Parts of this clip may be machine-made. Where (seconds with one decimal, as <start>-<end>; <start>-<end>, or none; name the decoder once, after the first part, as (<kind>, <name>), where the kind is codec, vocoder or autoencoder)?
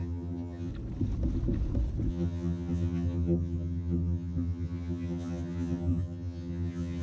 0.0-0.7 (vocoder, HiFi-GAN); 2.1-7.0